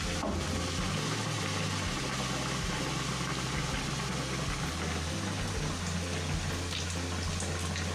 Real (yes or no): yes